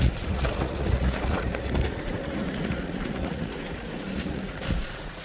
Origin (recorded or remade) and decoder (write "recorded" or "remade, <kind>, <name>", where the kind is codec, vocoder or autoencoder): remade, vocoder, Vocos